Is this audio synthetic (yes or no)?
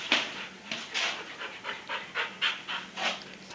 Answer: no